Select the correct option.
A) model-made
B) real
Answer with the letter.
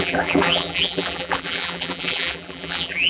A